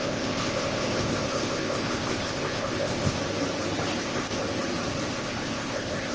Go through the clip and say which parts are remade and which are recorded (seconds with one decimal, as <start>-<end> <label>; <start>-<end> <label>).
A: 0.0-3.2 remade; 3.2-4.0 recorded; 4.0-4.4 remade; 4.4-5.1 recorded; 5.1-6.1 remade